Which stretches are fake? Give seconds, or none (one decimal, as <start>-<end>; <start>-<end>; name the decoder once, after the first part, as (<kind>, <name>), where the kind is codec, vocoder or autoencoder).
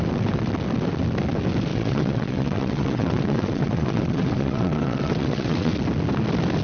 1.7-5.7 (vocoder, WaveNeXt)